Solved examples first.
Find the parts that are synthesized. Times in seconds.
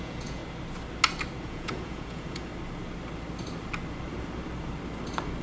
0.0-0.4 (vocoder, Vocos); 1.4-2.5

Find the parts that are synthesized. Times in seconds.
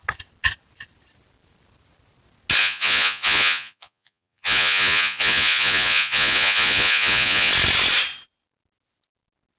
2.6-7.5 (vocoder, Vocos)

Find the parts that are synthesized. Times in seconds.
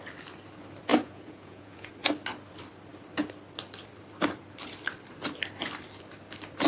0.9-1.9 (vocoder, Vocos)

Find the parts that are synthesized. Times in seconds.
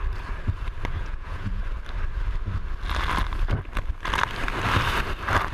1.0-1.6 (vocoder, Vocos)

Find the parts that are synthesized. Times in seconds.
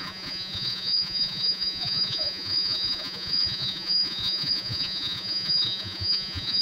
0.0-6.6 (vocoder, Vocos)